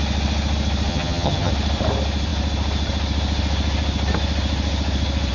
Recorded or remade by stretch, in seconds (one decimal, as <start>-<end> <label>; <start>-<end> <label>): 0.0-0.9 recorded; 0.9-1.5 remade; 1.5-5.3 recorded